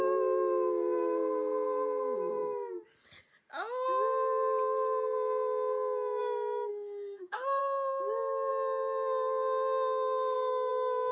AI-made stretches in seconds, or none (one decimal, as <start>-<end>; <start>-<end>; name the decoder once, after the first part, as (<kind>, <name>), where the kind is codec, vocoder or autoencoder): 6.7-7.6 (codec, SNAC)